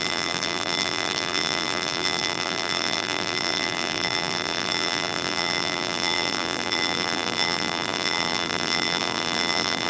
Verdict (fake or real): fake